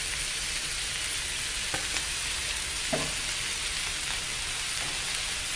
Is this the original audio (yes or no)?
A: yes